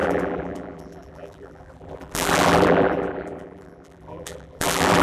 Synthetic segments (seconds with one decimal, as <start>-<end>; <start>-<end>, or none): 0.0-5.0